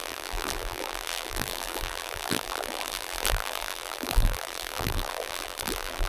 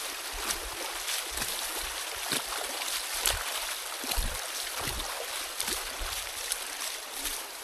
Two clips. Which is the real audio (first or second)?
second